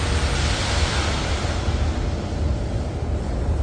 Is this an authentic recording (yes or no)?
yes